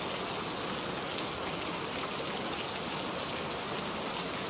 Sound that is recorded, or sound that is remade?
recorded